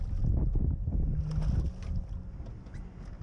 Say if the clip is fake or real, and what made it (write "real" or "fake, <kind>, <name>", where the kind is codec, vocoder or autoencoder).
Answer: real